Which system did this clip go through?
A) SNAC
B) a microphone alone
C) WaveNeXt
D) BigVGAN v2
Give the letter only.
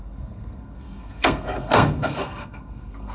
A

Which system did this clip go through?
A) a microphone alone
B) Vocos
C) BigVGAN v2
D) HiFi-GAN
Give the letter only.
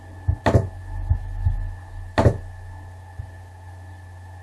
A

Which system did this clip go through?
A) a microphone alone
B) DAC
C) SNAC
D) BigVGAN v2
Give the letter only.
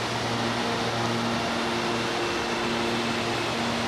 A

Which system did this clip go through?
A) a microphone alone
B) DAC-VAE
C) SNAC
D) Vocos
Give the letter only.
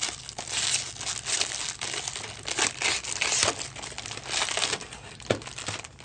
A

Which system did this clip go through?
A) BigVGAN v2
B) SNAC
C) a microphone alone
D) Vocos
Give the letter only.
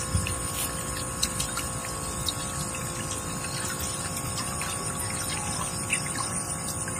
C